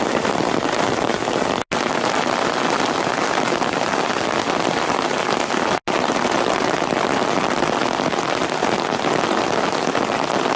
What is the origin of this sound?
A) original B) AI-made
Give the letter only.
A